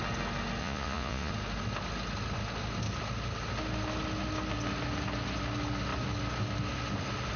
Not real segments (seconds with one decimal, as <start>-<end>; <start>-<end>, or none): 0.6-1.3